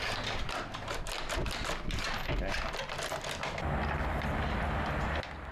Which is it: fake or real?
real